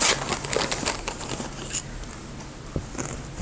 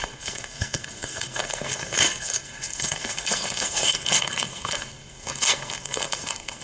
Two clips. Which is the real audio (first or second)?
first